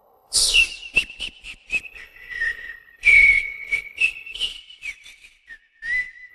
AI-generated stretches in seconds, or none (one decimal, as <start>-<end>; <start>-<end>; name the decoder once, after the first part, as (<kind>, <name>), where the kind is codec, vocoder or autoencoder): 0.0-0.6 (codec, HILCodec); 1.8-4.5